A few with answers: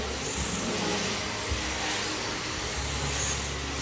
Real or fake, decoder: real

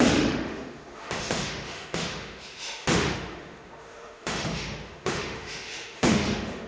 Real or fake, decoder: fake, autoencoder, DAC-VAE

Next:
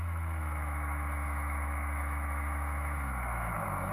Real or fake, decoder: fake, autoencoder, DAC-VAE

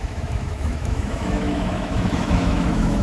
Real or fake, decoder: fake, autoencoder, DAC-VAE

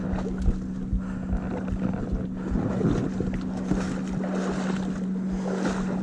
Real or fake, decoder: real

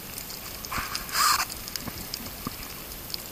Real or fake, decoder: real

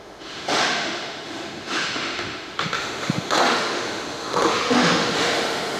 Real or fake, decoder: fake, autoencoder, DAC-VAE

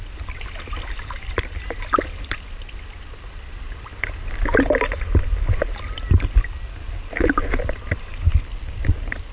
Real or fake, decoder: real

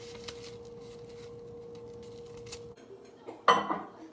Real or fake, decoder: real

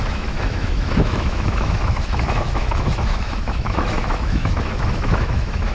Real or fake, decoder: fake, autoencoder, DAC-VAE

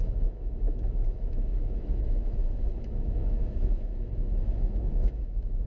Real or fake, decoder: fake, autoencoder, DAC-VAE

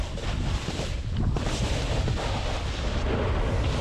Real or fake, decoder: real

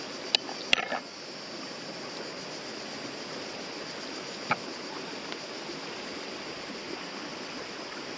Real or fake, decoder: real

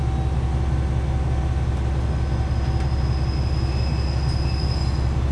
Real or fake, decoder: real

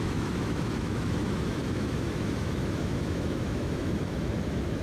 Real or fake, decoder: fake, autoencoder, DAC-VAE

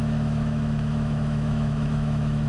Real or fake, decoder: fake, autoencoder, DAC-VAE